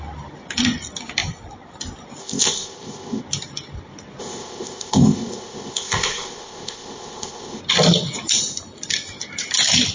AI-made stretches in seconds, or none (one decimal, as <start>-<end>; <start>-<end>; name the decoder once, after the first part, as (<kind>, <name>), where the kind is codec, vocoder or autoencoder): 2.2-3.2 (codec, ZipCodec); 4.2-7.6